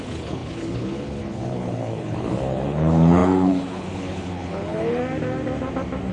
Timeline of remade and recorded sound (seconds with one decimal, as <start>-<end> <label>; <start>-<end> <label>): 0.0-5.0 remade; 5.0-6.1 recorded